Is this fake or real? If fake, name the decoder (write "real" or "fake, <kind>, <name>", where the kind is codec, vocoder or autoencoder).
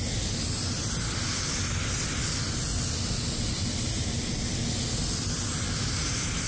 real